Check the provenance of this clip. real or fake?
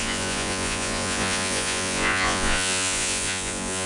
fake